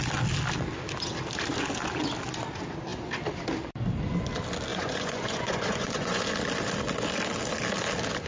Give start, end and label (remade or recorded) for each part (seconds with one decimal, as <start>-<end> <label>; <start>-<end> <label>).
0.0-4.7 recorded; 4.7-6.2 remade; 6.2-8.3 recorded